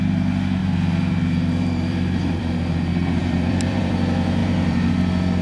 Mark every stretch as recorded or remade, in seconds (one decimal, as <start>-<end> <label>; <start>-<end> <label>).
0.0-0.6 recorded; 0.6-2.4 remade; 2.4-3.2 recorded; 3.2-3.9 remade; 3.9-4.4 recorded; 4.4-4.9 remade; 4.9-5.4 recorded